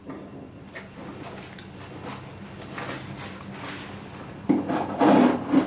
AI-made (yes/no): no